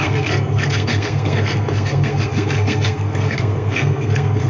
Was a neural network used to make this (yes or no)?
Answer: yes